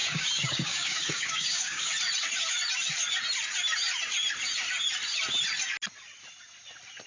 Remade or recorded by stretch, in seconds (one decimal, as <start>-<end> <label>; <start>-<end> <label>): 0.0-1.9 remade; 1.9-7.1 recorded

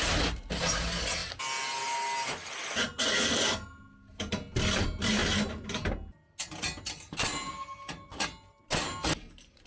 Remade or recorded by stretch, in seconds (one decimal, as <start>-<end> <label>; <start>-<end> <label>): 0.0-9.7 recorded

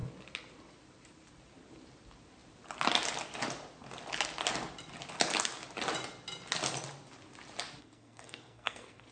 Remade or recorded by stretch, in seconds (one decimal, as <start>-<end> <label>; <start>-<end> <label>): 0.0-7.8 recorded; 7.8-9.1 remade